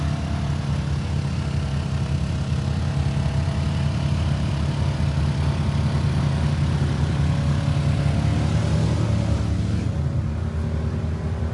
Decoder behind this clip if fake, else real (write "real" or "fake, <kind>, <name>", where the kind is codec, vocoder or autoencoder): real